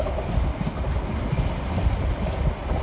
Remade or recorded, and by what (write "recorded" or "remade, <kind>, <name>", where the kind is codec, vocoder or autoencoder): recorded